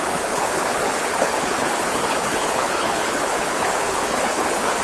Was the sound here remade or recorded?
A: remade